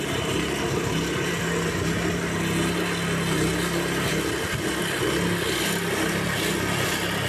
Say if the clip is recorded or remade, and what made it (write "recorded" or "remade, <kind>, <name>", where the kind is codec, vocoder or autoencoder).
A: recorded